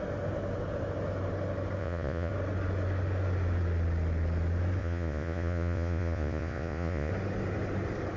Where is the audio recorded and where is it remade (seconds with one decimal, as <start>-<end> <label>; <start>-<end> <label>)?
0.0-1.8 recorded; 1.8-2.3 remade; 2.3-4.8 recorded; 4.8-7.1 remade; 7.1-8.2 recorded